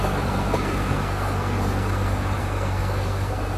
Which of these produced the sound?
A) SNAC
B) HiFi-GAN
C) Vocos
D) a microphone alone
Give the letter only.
A